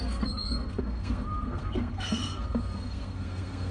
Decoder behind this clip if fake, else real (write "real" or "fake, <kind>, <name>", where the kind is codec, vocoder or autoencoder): fake, codec, SNAC